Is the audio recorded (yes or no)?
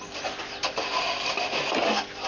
yes